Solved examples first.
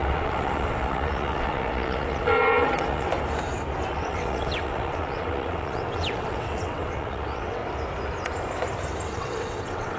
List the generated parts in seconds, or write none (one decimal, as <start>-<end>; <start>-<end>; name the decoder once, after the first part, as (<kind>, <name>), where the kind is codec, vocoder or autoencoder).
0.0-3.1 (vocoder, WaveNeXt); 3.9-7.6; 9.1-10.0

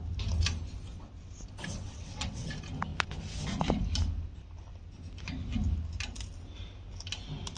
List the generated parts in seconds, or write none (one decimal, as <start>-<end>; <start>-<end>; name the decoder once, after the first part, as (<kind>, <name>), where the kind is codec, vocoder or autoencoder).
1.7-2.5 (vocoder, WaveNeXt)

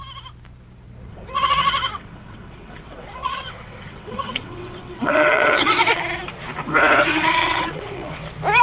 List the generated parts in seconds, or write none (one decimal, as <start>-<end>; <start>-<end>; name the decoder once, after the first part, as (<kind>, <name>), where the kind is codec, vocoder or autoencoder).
1.1-6.0 (vocoder, WaveNeXt); 7.1-8.2

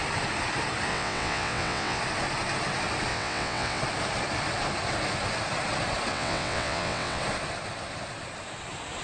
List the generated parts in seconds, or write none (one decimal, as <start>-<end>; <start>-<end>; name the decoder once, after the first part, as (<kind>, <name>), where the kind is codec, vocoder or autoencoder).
0.9-2.0 (vocoder, WaveNeXt); 3.1-3.8; 6.1-7.2